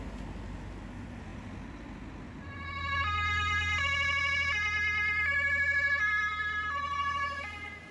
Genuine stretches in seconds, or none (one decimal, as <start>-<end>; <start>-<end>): 0.0-7.9